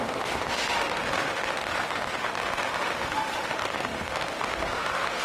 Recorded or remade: remade